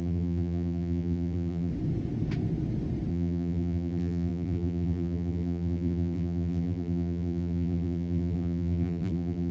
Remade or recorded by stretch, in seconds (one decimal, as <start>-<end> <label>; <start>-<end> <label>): 0.0-1.7 remade; 1.7-3.1 recorded; 3.1-9.5 remade